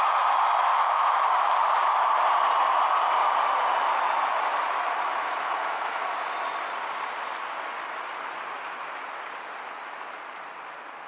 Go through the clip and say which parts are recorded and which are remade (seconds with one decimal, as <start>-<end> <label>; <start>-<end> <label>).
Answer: 0.0-0.7 recorded; 0.7-1.2 remade; 1.2-5.1 recorded; 5.1-6.1 remade; 6.1-11.1 recorded